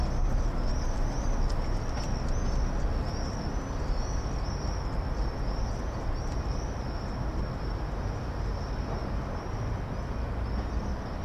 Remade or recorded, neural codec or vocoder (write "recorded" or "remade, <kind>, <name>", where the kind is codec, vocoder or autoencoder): recorded